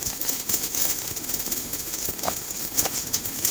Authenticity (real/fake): fake